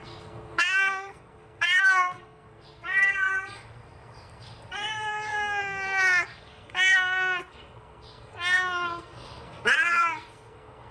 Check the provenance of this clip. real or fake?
fake